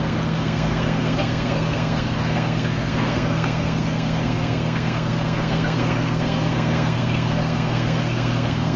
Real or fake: fake